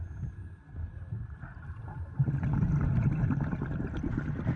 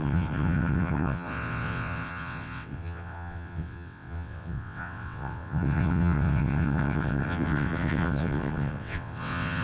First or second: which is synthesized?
second